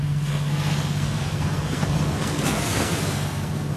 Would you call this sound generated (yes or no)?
yes